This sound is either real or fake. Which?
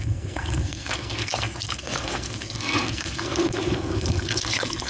fake